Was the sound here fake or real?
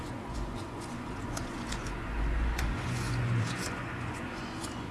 fake